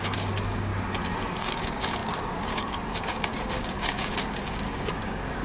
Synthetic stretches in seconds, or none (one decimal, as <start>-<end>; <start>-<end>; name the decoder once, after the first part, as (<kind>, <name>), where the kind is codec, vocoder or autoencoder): 0.0-0.7 (codec, DAC); 1.4-5.4